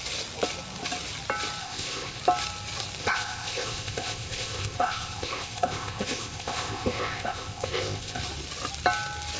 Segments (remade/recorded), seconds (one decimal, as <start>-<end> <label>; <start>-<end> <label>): 0.0-1.6 recorded; 1.6-2.2 remade; 2.2-3.0 recorded; 3.0-8.2 remade; 8.2-9.4 recorded